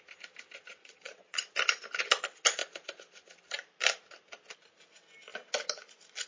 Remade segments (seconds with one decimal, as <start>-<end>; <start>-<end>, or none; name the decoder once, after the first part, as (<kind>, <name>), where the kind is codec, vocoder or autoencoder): 0.8-1.5 (vocoder, Vocos)